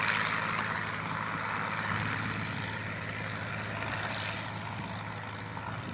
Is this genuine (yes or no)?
yes